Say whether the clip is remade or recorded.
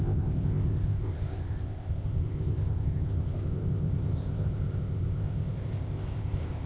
remade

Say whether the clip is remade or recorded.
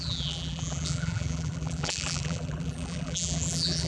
remade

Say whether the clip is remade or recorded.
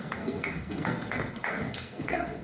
remade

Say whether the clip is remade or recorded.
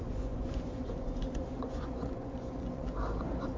remade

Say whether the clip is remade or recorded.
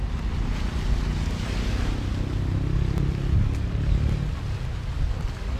recorded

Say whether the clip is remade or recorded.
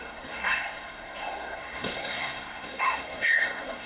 remade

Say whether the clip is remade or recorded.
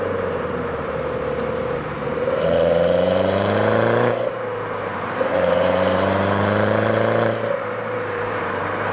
remade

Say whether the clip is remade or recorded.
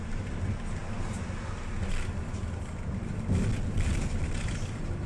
recorded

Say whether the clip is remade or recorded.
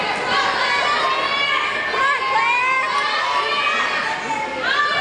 recorded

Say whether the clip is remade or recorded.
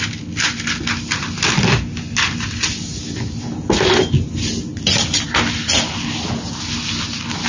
recorded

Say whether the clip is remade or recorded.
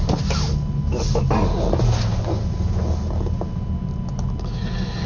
recorded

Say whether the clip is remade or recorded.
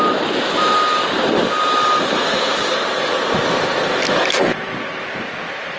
recorded